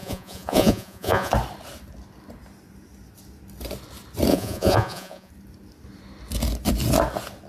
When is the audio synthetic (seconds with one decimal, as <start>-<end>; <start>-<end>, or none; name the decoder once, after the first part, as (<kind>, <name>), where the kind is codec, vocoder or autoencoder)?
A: 0.0-1.3 (vocoder, Vocos); 4.3-5.3

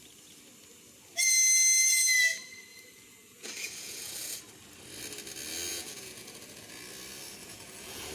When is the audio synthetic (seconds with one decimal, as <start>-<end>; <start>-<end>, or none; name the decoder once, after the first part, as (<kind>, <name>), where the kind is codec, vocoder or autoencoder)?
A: 2.7-4.4 (vocoder, Vocos); 5.7-6.7; 7.4-8.1

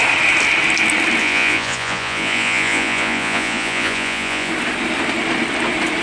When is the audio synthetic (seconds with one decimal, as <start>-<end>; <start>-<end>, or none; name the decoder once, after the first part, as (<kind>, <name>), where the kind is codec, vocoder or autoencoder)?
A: 1.2-4.5 (vocoder, Vocos)

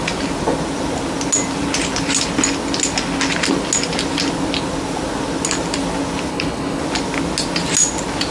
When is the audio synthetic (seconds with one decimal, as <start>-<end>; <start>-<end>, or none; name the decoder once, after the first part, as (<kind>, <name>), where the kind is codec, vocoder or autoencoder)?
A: 6.3-6.8 (codec, HILCodec)

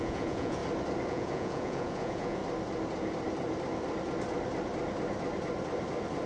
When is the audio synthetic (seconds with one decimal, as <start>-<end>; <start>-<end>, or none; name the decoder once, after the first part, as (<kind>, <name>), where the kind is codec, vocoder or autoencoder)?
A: 0.0-0.6 (vocoder, Vocos); 1.1-2.4

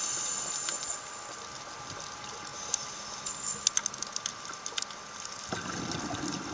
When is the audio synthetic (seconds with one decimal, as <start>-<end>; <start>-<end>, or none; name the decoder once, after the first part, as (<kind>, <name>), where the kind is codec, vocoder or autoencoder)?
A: none

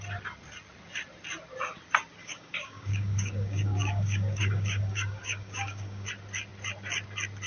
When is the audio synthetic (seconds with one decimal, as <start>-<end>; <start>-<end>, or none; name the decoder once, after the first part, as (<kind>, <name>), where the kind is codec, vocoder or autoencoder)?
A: 2.2-6.1 (codec, DAC)